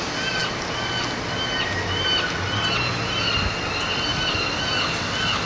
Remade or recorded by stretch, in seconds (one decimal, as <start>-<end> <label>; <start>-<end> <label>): 0.0-4.1 recorded; 4.1-4.6 remade; 4.6-5.5 recorded